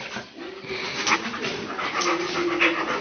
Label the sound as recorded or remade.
recorded